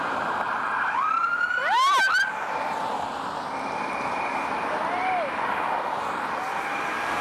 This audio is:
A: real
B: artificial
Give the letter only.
A